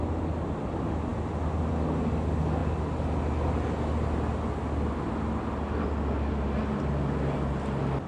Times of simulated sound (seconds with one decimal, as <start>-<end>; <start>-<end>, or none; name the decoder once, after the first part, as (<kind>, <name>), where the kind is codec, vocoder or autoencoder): none